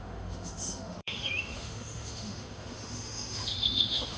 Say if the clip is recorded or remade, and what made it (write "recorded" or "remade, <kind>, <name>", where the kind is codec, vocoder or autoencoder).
remade, autoencoder, DAC-VAE